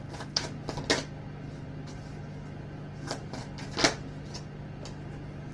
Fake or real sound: real